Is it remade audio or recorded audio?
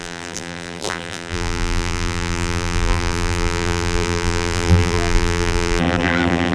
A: remade